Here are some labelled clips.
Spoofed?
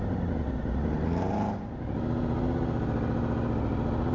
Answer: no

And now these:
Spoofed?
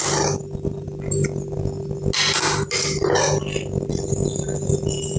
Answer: no